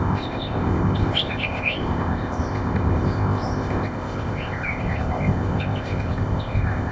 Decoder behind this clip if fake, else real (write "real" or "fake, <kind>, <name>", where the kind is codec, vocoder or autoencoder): fake, codec, ZipCodec